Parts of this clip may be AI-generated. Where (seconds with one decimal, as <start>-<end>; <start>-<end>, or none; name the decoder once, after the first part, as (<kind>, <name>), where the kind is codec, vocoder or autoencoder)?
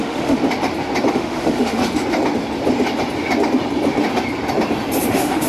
0.0-0.4 (autoencoder, DAC-VAE); 1.1-1.8; 5.1-5.5